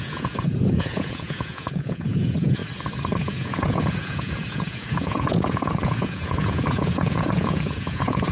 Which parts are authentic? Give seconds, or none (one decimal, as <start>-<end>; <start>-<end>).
2.6-3.2